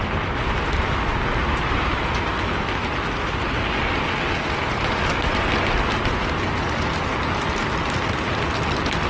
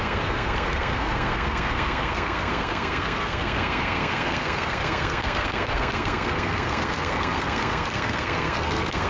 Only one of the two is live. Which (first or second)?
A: first